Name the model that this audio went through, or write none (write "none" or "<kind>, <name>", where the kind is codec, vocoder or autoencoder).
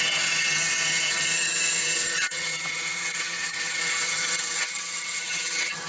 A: vocoder, HiFi-GAN